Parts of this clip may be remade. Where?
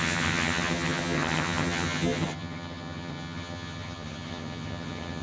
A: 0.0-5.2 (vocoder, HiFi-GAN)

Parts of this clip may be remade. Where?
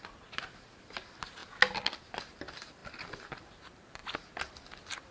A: none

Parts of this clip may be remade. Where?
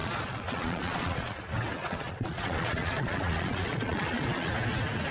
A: 0.0-1.4 (vocoder, Vocos); 1.8-4.5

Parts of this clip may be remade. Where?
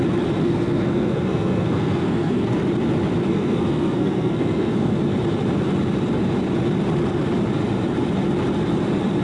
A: 0.4-2.5 (codec, SNAC); 3.3-5.0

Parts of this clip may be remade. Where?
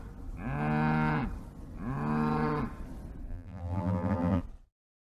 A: 3.3-4.4 (vocoder, BigVGAN v2)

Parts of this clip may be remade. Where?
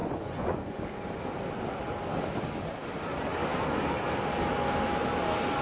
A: 0.0-0.8 (vocoder, Vocos)